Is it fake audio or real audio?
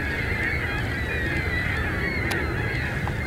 real